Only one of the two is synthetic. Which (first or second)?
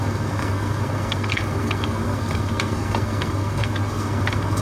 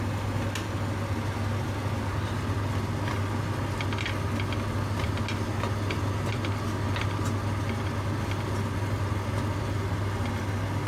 first